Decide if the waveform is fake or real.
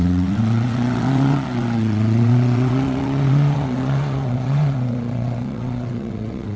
fake